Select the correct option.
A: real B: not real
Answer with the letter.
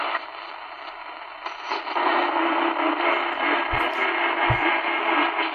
A